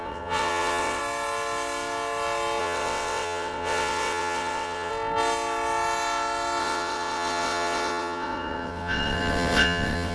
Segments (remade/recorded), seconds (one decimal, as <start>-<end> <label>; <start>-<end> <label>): 0.0-1.0 remade; 1.0-2.6 recorded; 2.6-4.9 remade; 4.9-6.6 recorded; 6.6-10.1 remade